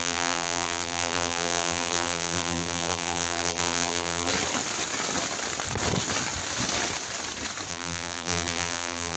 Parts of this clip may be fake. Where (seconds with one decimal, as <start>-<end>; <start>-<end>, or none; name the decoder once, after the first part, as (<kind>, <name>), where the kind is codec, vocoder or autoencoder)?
0.0-4.3 (vocoder, BigVGAN v2); 7.7-9.2